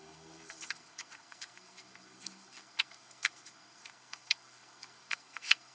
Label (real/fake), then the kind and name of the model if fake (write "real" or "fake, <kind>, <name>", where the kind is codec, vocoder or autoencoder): fake, codec, SNAC